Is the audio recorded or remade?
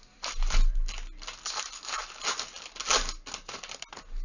recorded